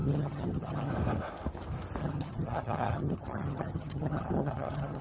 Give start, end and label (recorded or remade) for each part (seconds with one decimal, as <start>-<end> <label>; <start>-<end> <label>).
0.0-0.9 remade; 0.9-2.0 recorded; 2.0-5.0 remade